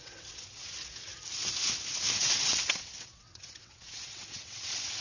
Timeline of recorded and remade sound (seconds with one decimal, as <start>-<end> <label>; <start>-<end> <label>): 0.0-1.1 remade; 1.1-2.2 recorded; 2.2-5.0 remade